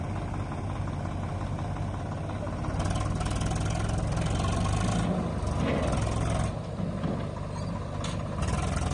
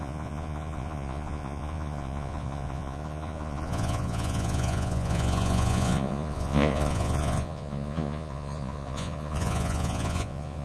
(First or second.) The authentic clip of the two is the first